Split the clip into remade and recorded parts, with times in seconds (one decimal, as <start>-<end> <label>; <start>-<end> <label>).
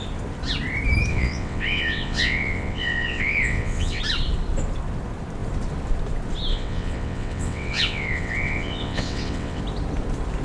0.0-1.1 recorded; 1.1-4.0 remade; 4.0-6.5 recorded; 6.5-9.6 remade; 9.6-10.4 recorded